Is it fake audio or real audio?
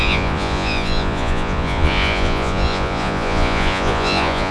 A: fake